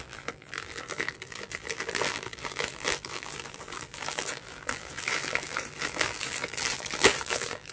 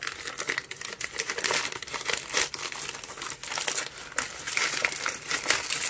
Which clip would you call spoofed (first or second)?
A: first